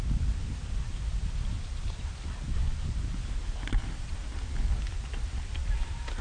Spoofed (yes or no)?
no